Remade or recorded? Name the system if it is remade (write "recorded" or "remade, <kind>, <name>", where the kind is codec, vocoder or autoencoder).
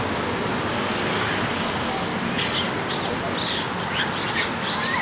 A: recorded